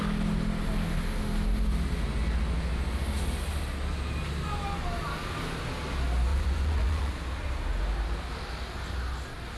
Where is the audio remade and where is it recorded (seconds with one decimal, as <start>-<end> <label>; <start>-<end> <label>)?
0.0-6.3 recorded; 6.3-7.1 remade; 7.1-9.6 recorded